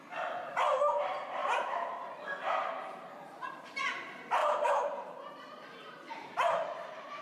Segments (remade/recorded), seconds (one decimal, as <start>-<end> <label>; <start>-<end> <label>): 0.0-1.4 recorded; 1.4-1.9 remade; 1.9-2.6 recorded; 2.6-3.7 remade; 3.7-4.4 recorded; 4.4-7.2 remade